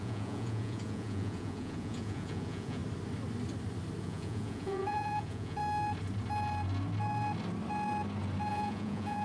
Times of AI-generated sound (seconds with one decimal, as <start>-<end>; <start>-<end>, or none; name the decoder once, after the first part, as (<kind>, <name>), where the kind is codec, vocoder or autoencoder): 0.0-2.8 (vocoder, Vocos); 4.0-5.6; 8.5-9.2

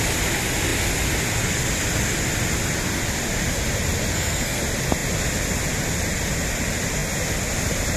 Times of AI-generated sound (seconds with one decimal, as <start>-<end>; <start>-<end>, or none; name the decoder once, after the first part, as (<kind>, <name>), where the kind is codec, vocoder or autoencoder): 4.1-4.6 (codec, SNAC)

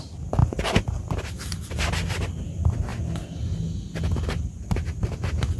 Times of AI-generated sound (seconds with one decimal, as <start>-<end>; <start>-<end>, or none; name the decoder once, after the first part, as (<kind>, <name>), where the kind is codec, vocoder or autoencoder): none

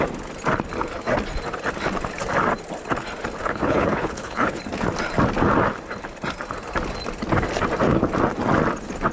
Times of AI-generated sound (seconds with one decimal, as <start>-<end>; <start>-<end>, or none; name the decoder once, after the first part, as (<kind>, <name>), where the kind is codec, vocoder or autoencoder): 3.4-4.6 (codec, HILCodec)

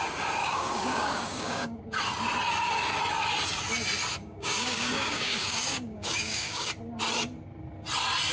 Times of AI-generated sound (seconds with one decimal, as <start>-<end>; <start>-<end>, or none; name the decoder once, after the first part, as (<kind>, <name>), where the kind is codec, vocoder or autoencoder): 0.4-1.8 (codec, DAC); 4.2-6.7

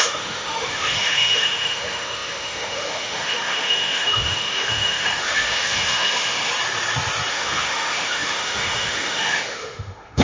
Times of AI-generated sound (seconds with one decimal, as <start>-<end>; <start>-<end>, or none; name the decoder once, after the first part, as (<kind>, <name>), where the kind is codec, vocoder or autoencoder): 0.0-6.5 (autoencoder, DAC-VAE); 7.3-10.2

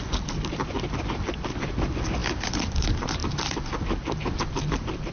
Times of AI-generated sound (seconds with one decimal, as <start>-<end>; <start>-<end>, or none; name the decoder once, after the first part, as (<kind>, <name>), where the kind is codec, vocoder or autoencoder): none

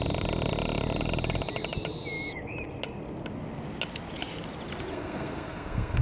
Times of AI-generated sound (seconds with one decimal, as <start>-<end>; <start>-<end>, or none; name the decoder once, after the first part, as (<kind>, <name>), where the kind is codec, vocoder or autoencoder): 4.9-6.0 (codec, SNAC)